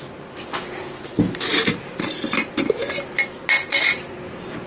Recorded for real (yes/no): yes